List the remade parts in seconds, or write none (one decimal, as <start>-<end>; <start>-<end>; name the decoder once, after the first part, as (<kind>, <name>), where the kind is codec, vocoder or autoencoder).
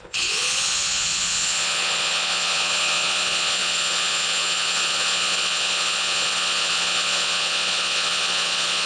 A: 0.0-8.9 (vocoder, Vocos)